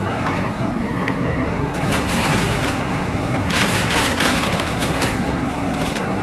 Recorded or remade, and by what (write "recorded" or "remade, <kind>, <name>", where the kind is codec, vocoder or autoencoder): remade, codec, SNAC